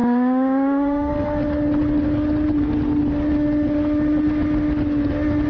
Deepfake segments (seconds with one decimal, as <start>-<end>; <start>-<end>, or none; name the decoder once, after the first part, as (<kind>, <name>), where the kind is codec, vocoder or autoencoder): 0.0-1.1 (autoencoder, DAC-VAE)